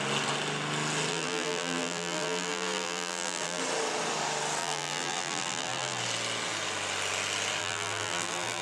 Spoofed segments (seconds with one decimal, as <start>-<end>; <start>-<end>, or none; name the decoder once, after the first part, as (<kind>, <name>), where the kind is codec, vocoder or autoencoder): 1.1-3.6 (vocoder, BigVGAN v2); 4.6-6.0; 7.6-8.6